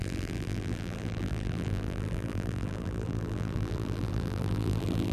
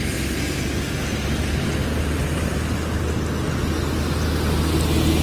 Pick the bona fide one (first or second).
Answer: second